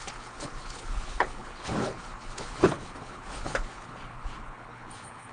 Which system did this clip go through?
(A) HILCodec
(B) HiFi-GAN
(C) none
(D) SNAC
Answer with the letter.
A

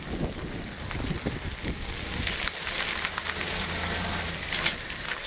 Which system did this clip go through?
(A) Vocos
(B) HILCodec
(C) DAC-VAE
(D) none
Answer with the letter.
D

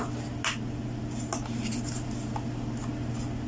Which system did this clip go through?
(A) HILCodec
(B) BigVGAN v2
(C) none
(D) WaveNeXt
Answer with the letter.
C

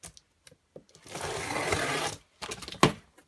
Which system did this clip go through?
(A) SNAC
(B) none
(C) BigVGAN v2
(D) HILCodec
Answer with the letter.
B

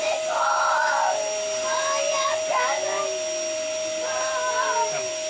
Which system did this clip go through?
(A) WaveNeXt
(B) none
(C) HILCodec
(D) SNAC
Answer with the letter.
B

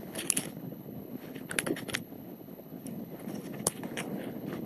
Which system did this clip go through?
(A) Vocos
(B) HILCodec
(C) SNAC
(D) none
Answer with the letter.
B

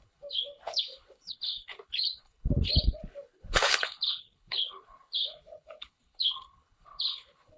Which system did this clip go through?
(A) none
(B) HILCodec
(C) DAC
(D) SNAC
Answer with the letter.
B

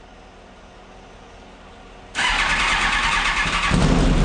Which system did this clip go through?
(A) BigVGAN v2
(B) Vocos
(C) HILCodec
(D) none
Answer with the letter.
D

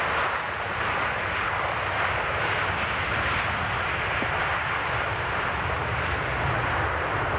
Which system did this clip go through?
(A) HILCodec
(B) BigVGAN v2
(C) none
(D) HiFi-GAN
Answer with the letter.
C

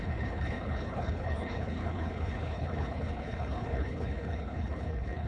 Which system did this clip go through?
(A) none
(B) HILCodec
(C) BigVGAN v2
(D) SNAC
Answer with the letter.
B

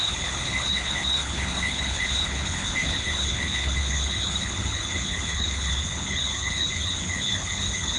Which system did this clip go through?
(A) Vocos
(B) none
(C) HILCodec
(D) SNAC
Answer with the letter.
C